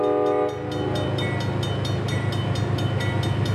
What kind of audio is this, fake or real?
real